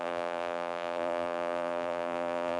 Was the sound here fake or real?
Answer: fake